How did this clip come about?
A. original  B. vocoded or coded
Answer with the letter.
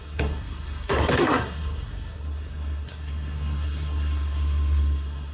B